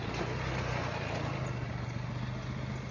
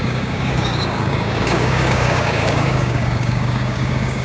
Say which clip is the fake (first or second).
second